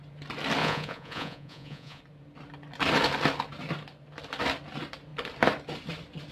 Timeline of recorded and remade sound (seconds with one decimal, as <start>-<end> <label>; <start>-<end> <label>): 0.0-0.6 recorded; 0.6-2.0 remade; 2.0-6.3 recorded